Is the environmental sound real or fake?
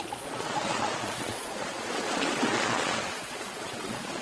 fake